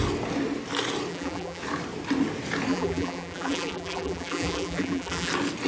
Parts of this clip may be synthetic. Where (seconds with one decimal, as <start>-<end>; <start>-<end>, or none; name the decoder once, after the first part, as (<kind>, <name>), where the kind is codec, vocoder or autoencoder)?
1.1-1.6 (vocoder, BigVGAN v2); 2.7-5.3